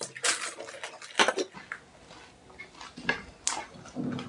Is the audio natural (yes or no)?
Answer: yes